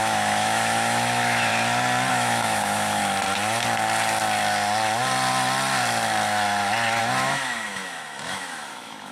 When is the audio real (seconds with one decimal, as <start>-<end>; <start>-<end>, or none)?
1.5-2.1; 3.0-7.0